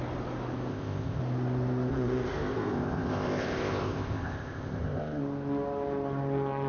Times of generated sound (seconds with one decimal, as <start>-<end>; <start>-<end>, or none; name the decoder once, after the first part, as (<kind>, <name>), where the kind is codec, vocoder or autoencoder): 0.7-1.2 (codec, ZipCodec); 1.9-5.2

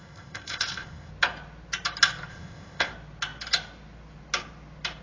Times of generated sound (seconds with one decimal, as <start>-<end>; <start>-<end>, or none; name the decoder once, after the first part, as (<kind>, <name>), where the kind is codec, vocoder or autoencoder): 0.0-1.1 (codec, ZipCodec); 2.3-2.9